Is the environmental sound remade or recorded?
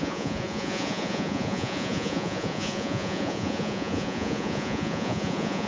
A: remade